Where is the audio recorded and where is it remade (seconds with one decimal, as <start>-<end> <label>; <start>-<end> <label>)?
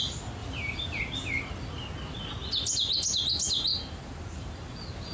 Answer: 0.0-0.4 recorded; 0.4-1.0 remade; 1.0-3.7 recorded; 3.7-5.1 remade